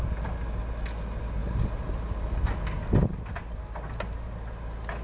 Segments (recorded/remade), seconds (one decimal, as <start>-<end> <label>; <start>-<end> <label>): 0.0-5.0 recorded